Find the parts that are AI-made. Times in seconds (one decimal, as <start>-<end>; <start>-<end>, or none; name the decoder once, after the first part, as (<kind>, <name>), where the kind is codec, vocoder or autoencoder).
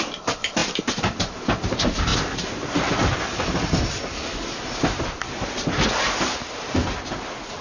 none